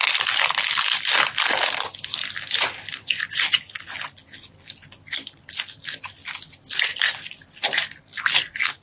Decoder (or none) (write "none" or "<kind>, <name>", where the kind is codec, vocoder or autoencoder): none